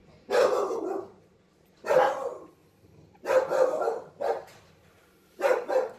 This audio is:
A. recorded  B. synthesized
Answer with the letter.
A